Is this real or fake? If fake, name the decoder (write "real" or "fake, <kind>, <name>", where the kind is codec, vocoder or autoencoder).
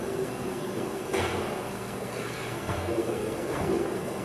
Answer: fake, codec, SNAC